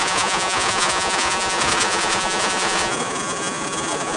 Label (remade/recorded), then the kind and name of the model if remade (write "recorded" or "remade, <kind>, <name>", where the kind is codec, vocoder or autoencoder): remade, vocoder, Vocos